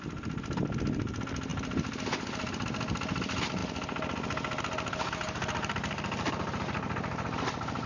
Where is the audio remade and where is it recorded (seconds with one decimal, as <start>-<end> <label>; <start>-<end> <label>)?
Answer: 0.0-7.9 recorded